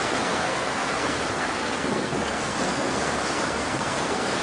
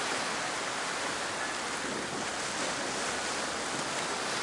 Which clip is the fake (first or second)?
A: first